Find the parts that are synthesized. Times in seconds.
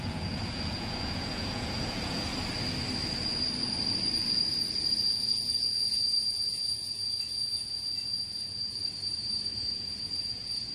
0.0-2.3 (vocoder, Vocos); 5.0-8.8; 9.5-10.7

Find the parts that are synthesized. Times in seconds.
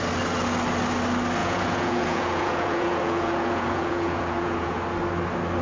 1.4-4.8 (vocoder, Vocos)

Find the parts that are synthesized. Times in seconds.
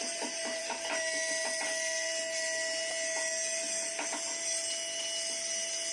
none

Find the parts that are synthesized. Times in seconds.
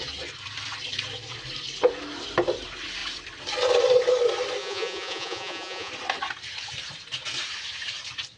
4.6-5.9 (vocoder, Vocos)